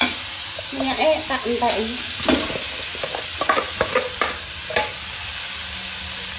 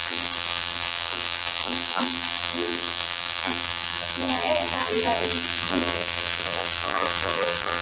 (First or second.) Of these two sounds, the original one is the first